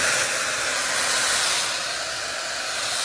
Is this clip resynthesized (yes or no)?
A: no